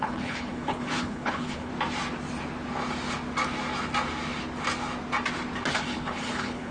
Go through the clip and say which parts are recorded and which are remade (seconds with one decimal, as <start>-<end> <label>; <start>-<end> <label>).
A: 0.0-1.7 remade; 1.7-5.7 recorded; 5.7-6.7 remade